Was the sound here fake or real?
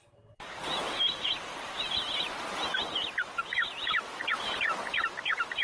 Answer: real